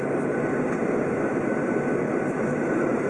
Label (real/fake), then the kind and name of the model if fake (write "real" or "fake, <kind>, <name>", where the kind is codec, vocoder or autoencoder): real